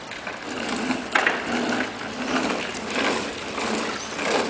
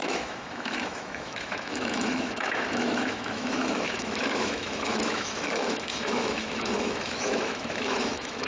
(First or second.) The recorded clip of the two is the first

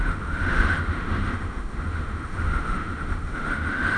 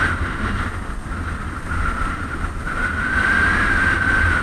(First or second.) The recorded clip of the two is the second